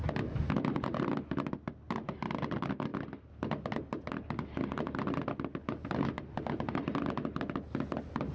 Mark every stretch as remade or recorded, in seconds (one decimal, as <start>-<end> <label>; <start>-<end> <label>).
0.0-8.3 recorded